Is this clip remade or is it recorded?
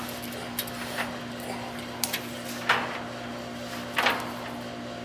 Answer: recorded